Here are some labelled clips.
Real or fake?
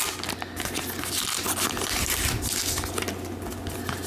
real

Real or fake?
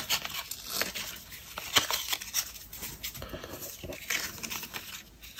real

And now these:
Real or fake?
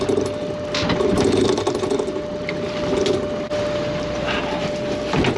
real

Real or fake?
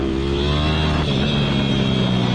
real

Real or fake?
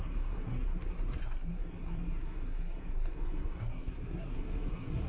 fake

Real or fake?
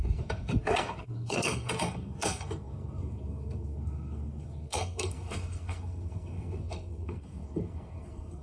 fake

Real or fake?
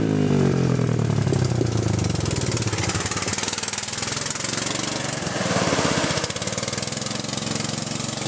real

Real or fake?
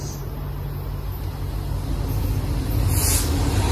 real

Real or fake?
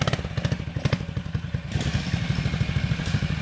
real